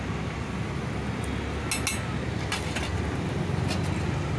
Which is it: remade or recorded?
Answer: recorded